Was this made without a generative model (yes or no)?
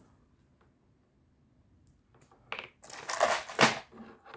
yes